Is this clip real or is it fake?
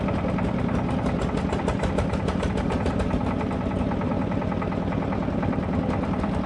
real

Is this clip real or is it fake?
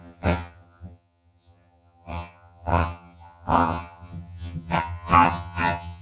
fake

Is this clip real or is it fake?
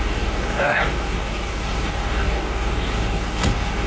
fake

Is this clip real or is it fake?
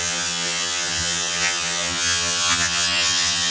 fake